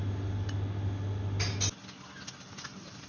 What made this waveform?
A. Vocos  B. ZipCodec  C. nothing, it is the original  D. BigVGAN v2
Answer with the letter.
C